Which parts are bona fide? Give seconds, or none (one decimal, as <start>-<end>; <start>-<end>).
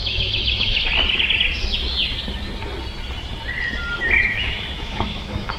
0.8-4.2